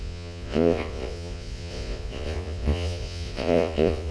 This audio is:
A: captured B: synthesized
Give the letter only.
B